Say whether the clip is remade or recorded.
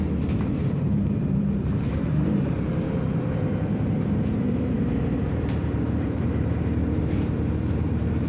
remade